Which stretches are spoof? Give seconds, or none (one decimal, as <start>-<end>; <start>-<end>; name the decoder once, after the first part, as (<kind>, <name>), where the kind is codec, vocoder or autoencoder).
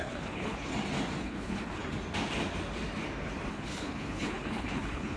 0.0-0.7 (codec, HILCodec); 1.2-1.8; 3.5-5.2